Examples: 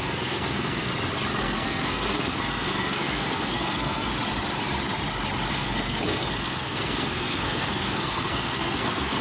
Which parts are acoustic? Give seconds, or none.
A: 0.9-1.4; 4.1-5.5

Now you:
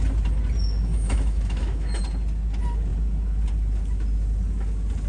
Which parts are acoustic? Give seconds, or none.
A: 0.0-0.9; 2.0-5.1

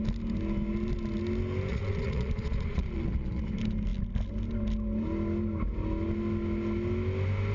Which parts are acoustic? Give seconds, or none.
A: 0.0-1.7; 3.5-7.5

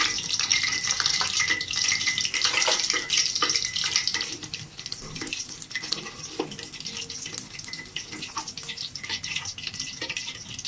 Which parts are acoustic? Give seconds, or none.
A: 4.0-8.8